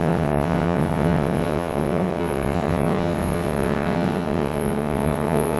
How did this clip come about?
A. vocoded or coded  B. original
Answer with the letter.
A